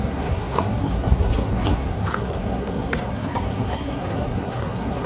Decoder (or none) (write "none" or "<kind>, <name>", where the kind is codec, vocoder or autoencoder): codec, SNAC